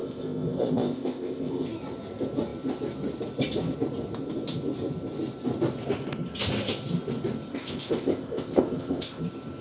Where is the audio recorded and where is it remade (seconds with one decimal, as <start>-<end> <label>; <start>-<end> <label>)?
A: 0.0-1.7 remade; 1.7-7.5 recorded; 7.5-9.2 remade; 9.2-9.6 recorded